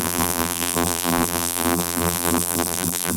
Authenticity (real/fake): fake